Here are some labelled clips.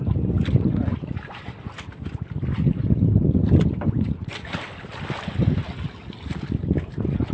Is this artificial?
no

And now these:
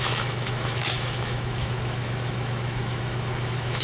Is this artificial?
yes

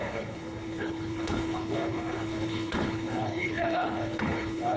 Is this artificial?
yes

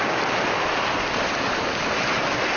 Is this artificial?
no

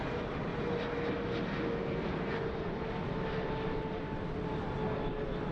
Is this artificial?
no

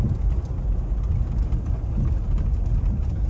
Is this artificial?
no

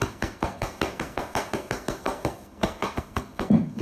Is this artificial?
yes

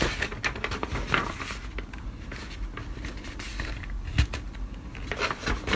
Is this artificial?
no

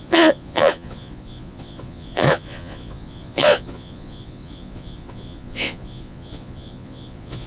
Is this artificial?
yes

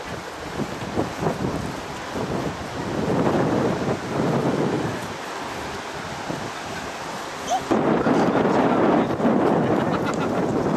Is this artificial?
no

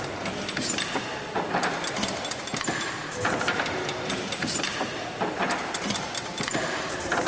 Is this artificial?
no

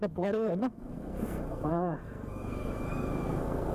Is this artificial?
yes